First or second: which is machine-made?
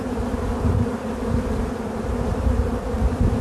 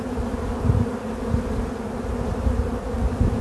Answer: first